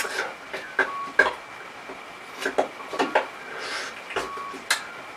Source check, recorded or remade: recorded